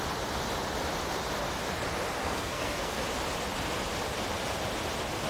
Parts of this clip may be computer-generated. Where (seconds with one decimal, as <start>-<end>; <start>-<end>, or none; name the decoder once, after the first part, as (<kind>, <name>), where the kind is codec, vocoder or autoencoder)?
2.2-3.0 (codec, SNAC)